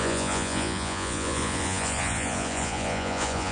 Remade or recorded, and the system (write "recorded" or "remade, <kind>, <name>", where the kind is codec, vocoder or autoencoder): remade, vocoder, Vocos